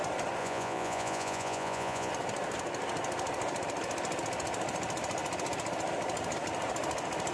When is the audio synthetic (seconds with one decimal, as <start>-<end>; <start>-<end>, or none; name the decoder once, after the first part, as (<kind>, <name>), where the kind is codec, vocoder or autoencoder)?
0.4-2.1 (vocoder, Vocos)